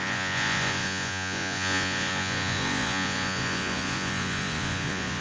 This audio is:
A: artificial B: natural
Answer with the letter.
A